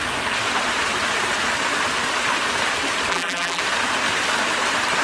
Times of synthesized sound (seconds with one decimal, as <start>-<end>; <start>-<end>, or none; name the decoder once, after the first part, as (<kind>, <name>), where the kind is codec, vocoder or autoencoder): 3.1-3.6 (vocoder, BigVGAN v2)